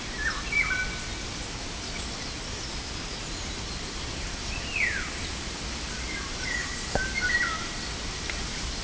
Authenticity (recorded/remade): recorded